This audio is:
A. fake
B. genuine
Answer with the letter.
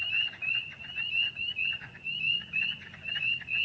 A